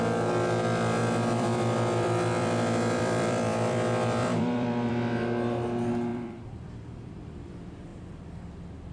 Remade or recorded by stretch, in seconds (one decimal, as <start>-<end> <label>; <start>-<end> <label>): 0.0-1.0 recorded; 1.0-4.9 remade; 4.9-6.1 recorded; 6.1-7.2 remade; 7.2-8.9 recorded